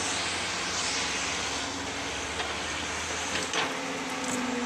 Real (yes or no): yes